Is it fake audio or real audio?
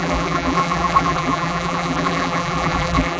fake